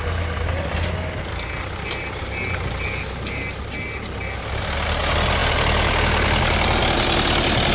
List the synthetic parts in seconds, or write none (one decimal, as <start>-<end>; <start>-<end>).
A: none